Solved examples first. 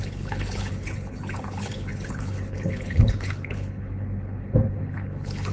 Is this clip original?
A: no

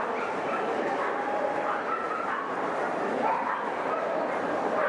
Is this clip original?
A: yes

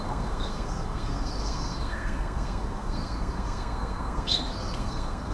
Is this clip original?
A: no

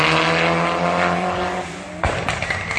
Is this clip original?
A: yes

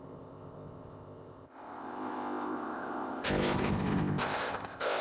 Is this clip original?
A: no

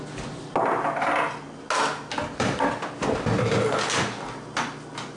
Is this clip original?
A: yes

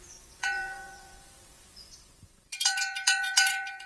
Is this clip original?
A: no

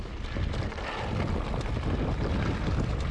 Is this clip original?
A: yes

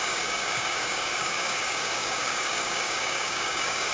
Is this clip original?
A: no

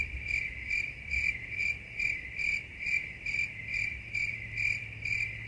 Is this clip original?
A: no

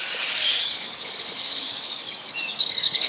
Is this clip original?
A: no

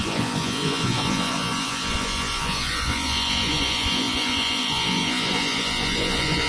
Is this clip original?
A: no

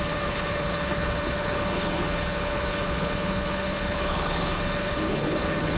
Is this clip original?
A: no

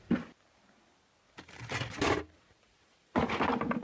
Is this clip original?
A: yes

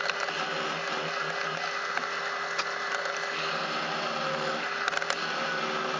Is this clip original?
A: yes